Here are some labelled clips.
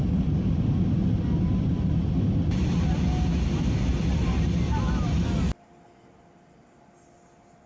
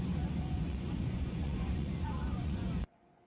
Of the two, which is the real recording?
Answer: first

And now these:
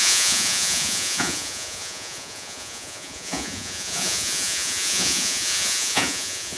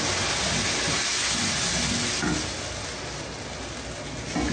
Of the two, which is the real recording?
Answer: second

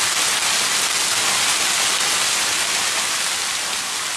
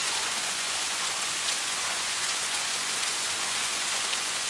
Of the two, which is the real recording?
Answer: first